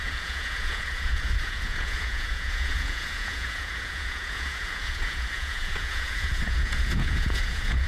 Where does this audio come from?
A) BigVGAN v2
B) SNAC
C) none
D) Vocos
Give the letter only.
D